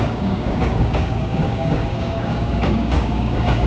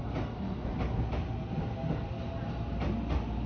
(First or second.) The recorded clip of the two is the second